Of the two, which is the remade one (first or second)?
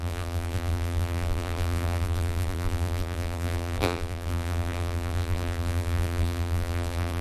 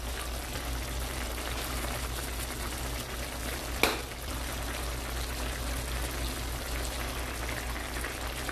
first